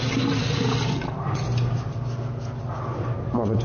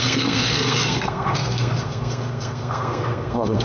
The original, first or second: first